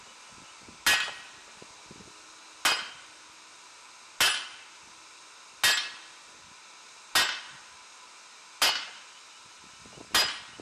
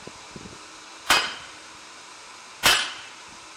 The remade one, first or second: second